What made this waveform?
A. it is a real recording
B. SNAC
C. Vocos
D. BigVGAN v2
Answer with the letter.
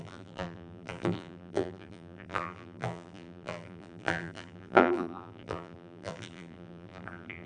D